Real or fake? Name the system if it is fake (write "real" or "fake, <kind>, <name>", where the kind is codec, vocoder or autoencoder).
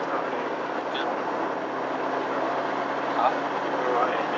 real